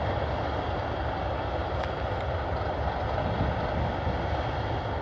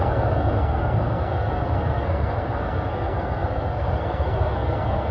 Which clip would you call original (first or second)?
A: first